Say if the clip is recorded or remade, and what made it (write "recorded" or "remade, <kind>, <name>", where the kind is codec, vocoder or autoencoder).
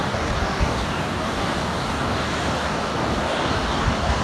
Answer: remade, codec, DAC